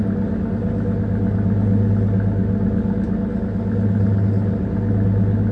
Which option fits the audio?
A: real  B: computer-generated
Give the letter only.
A